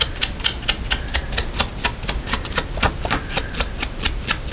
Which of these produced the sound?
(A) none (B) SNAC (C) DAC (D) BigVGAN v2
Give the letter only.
A